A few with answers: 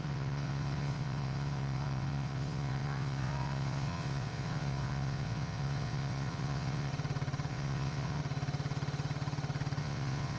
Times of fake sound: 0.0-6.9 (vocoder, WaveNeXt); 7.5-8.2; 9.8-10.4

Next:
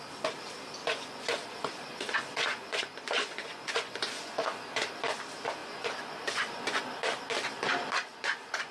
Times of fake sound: 0.8-4.9 (vocoder, Vocos); 5.6-6.8; 8.1-8.7

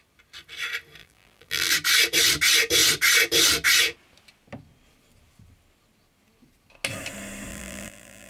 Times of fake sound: 1.0-1.7 (vocoder, BigVGAN v2); 7.5-8.3